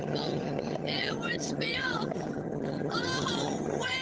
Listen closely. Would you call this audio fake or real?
fake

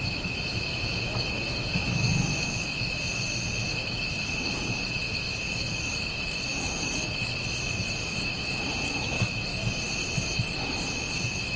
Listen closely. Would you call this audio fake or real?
fake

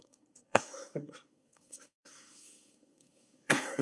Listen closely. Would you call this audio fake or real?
fake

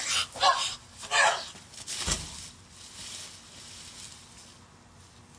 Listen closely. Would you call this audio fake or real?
real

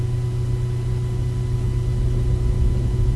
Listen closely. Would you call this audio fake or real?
real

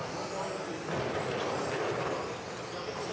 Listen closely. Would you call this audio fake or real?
fake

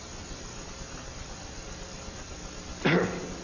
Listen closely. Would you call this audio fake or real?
real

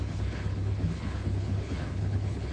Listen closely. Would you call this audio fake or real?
fake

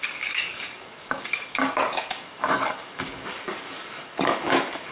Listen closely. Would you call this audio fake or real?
fake